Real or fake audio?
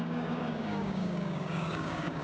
fake